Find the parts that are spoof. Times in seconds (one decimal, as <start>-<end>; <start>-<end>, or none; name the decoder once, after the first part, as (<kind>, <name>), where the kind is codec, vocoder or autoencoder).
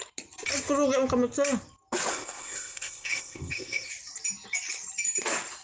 2.1-3.9 (codec, ZipCodec)